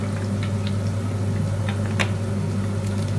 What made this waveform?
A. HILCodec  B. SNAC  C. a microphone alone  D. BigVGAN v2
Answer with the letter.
C